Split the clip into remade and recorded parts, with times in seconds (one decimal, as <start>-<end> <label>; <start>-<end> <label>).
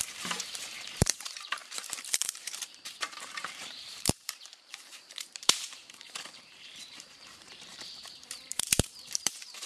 0.0-9.7 remade